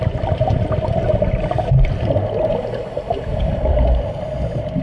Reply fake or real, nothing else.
real